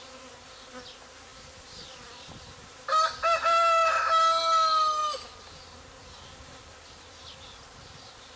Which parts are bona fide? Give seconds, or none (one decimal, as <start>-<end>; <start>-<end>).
0.0-1.3; 1.8-5.0; 5.5-6.0; 7.2-8.4